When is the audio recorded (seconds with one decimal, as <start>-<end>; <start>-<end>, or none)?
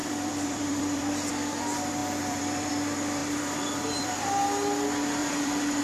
1.3-2.0; 2.7-3.2; 4.1-5.2